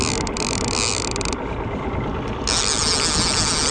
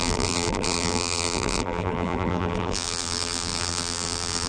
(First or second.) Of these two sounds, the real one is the first